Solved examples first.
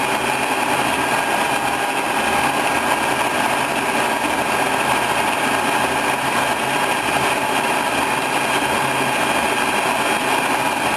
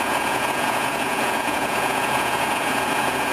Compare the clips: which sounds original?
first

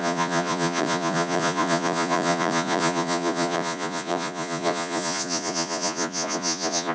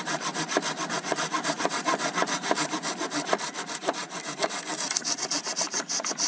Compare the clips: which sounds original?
second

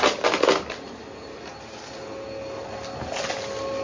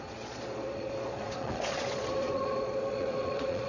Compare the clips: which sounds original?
first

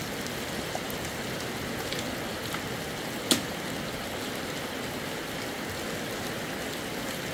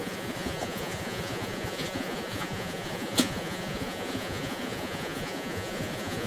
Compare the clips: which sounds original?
first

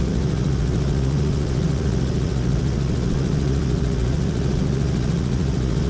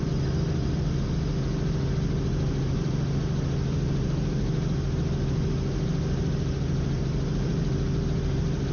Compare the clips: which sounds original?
second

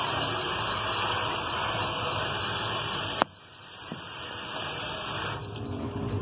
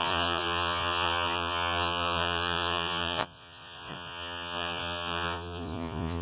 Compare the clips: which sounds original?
first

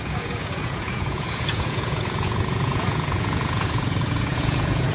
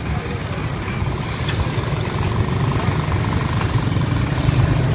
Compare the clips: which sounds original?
second